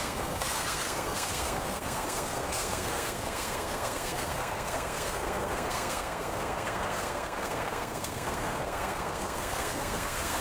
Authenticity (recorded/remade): remade